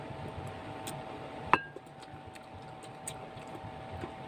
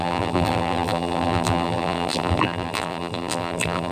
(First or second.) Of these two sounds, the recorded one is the first